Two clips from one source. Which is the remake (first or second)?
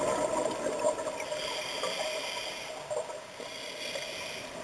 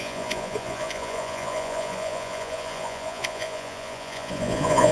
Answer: second